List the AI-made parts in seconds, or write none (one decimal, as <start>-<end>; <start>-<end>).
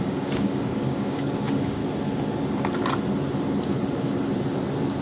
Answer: 0.0-1.8